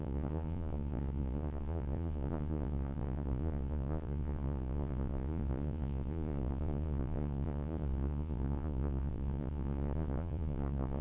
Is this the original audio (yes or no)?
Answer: no